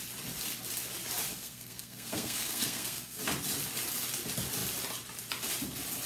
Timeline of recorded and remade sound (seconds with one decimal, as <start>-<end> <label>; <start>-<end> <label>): 0.0-1.3 recorded; 1.3-3.2 remade; 3.2-6.1 recorded